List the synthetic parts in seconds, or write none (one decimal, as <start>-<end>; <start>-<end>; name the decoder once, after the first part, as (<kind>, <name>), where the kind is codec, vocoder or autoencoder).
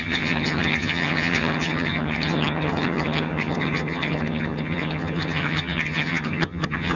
0.0-7.0 (vocoder, HiFi-GAN)